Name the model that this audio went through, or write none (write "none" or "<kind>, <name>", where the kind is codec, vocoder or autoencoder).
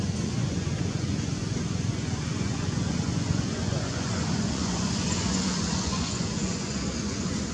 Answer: vocoder, Vocos